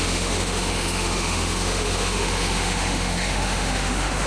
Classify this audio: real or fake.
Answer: fake